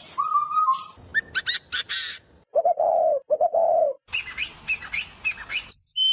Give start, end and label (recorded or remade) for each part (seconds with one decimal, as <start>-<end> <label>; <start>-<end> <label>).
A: 0.0-6.1 recorded